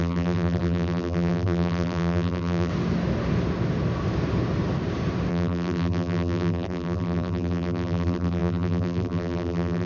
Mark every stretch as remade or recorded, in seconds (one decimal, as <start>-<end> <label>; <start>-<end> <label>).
0.0-2.7 remade; 2.7-5.3 recorded; 5.3-9.9 remade